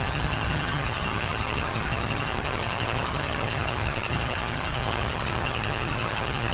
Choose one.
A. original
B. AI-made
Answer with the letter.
B